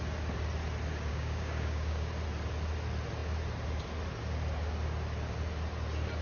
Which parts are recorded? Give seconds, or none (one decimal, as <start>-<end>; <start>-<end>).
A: 0.0-1.1; 2.1-6.2